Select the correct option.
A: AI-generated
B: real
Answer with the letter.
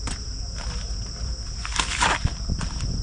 B